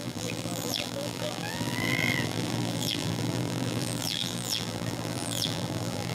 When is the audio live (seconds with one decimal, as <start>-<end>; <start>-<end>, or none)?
none